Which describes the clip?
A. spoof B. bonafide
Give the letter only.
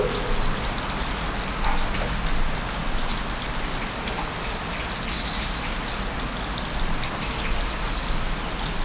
B